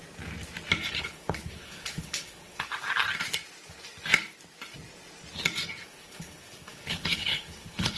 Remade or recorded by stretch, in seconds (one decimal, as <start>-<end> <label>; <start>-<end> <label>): 0.0-1.0 recorded; 1.0-2.7 remade; 2.7-5.8 recorded; 5.8-8.0 remade